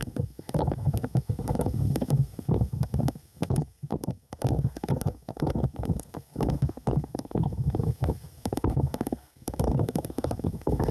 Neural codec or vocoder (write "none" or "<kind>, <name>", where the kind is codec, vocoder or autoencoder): codec, SNAC